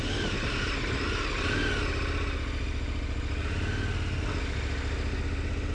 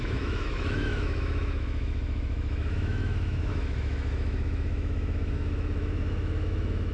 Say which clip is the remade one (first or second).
second